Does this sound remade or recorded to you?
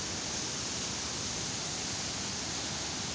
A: recorded